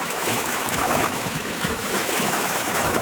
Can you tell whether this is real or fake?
fake